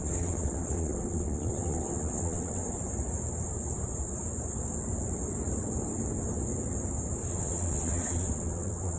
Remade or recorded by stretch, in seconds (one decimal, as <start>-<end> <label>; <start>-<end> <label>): 0.0-2.6 remade; 2.6-7.3 recorded; 7.3-9.0 remade